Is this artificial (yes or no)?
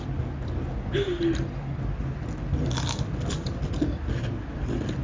no